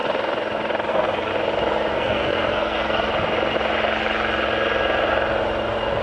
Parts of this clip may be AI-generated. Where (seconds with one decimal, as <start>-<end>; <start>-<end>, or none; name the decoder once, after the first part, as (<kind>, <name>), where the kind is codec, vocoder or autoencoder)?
0.9-1.3 (codec, SNAC); 1.9-3.1